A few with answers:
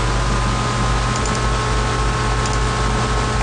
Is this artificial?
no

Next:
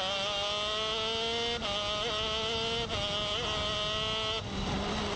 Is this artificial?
no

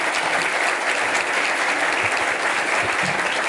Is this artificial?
no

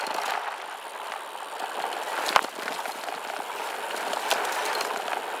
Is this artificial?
no